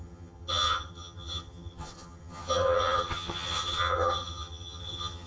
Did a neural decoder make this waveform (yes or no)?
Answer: yes